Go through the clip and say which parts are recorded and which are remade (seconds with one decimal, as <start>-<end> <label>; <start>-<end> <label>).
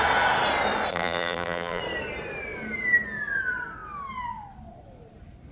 0.0-0.9 recorded; 0.9-1.8 remade; 1.8-5.5 recorded